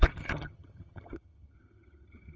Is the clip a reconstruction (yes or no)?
yes